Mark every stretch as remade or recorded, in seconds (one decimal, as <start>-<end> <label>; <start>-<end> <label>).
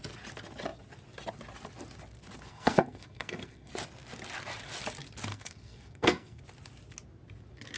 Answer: 0.0-2.5 recorded; 2.5-3.7 remade; 3.7-5.3 recorded; 5.3-6.4 remade; 6.4-7.8 recorded